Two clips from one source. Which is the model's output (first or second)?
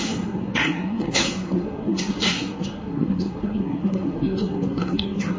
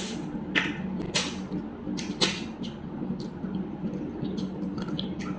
first